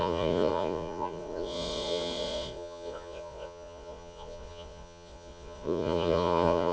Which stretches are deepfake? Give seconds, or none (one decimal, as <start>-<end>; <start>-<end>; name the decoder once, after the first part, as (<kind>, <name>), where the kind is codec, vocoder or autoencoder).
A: 0.0-6.7 (vocoder, Vocos)

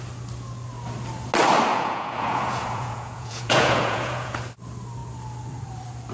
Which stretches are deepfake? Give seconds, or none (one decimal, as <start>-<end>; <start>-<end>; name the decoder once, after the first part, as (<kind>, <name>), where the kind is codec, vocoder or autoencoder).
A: 1.7-4.4 (vocoder, Vocos)

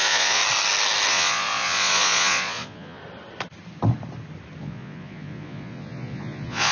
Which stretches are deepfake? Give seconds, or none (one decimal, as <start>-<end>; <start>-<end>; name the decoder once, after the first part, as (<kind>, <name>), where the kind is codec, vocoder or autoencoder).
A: 0.0-0.4 (vocoder, Vocos); 1.1-3.0; 4.6-6.7

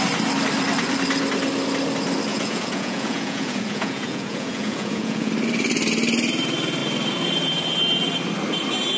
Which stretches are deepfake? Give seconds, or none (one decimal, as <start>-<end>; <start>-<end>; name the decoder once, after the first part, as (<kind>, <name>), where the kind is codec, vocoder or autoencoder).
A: 2.3-5.3 (vocoder, Vocos)

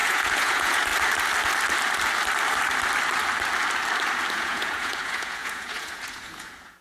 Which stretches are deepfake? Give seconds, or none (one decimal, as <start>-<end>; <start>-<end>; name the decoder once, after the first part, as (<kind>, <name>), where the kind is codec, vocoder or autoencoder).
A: 0.0-0.9 (vocoder, Vocos); 4.3-6.8